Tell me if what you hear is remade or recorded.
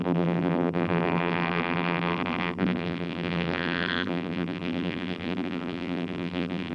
remade